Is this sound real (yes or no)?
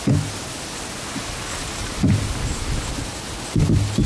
yes